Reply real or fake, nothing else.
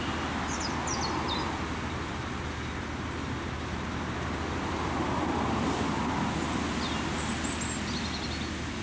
real